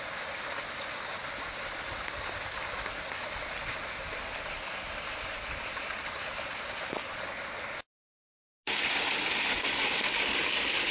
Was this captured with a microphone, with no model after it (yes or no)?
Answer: yes